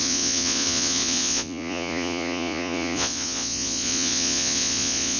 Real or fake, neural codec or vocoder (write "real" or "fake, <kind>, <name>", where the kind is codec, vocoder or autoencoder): fake, vocoder, Vocos